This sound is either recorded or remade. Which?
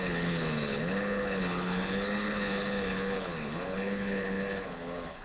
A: remade